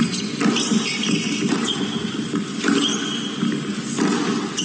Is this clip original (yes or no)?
yes